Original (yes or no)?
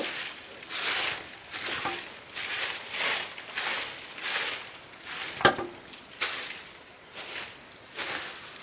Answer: yes